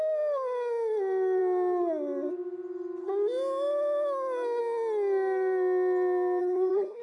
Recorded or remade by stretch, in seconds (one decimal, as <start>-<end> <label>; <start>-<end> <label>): 0.0-6.4 recorded; 6.4-7.0 remade